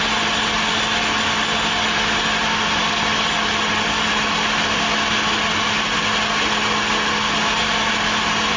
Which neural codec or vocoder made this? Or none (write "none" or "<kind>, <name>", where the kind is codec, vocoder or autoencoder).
none